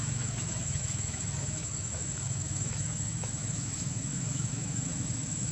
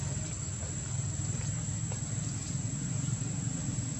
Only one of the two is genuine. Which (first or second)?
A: second